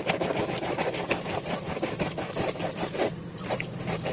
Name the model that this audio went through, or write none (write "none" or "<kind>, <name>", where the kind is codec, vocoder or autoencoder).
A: none